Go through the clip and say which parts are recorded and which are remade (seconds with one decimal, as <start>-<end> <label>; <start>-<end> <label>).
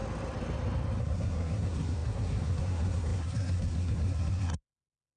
0.0-1.0 recorded; 1.0-5.2 remade